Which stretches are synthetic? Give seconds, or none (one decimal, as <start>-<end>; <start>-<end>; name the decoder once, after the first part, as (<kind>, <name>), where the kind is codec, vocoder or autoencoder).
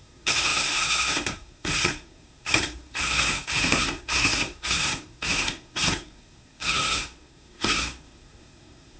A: 0.0-9.0 (codec, SNAC)